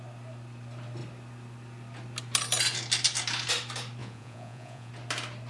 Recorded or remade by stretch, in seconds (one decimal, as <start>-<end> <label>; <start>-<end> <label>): 0.0-4.0 recorded; 4.0-4.9 remade; 4.9-5.5 recorded